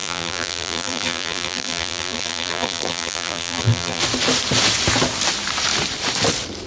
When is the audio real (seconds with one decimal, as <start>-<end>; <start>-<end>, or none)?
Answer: 4.0-6.7